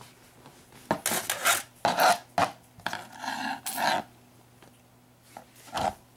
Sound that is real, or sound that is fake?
real